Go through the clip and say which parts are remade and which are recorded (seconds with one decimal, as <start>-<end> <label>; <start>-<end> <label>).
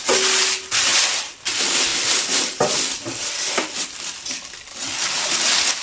0.0-1.9 recorded; 1.9-4.3 remade; 4.3-5.8 recorded